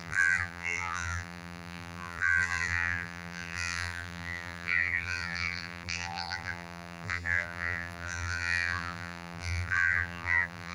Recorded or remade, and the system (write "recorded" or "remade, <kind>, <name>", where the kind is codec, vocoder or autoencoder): remade, vocoder, BigVGAN v2